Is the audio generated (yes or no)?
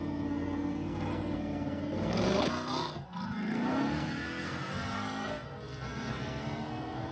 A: yes